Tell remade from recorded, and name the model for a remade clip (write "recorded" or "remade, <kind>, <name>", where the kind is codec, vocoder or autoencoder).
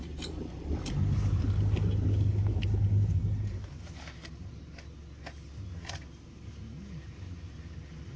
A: recorded